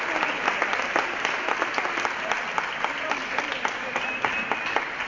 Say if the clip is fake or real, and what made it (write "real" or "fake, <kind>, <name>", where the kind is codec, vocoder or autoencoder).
real